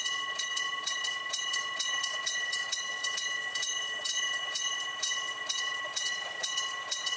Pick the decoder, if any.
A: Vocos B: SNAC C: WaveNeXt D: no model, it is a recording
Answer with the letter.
A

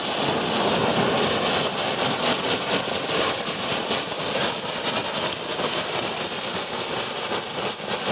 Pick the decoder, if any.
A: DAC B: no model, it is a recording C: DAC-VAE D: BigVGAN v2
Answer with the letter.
B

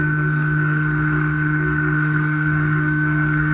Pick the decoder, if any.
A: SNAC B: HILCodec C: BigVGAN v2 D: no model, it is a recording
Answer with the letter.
A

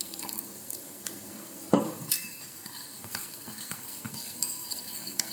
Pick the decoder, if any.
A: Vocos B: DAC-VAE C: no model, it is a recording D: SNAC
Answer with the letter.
D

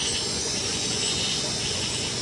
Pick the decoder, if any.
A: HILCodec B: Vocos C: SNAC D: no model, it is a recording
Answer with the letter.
B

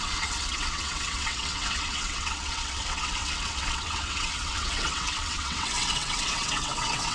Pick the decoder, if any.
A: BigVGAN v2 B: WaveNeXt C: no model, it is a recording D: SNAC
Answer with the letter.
B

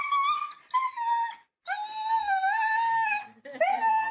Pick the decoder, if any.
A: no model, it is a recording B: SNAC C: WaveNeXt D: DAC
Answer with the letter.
A